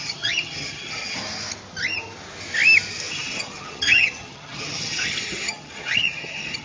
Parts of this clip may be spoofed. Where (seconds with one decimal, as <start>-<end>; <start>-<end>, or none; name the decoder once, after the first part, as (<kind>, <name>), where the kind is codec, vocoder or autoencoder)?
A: 0.0-1.2 (vocoder, HiFi-GAN); 3.1-6.6